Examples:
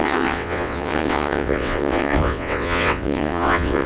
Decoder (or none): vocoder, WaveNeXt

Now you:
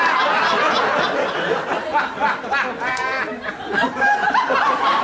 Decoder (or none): none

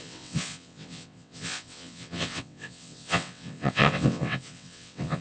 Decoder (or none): vocoder, WaveNeXt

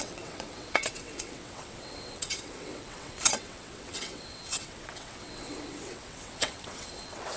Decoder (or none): vocoder, WaveNeXt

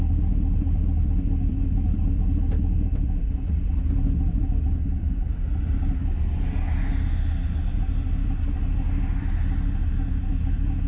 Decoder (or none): none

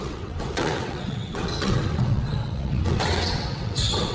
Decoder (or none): vocoder, WaveNeXt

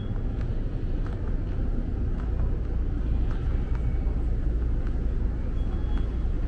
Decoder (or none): none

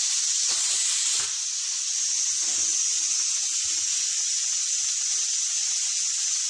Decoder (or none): none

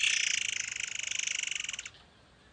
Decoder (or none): none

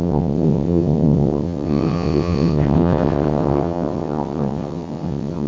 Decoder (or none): vocoder, WaveNeXt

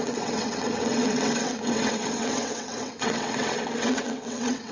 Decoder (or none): vocoder, WaveNeXt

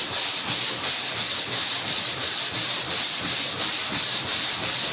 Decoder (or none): none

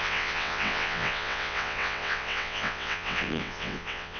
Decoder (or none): vocoder, WaveNeXt